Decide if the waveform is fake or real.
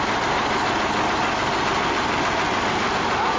real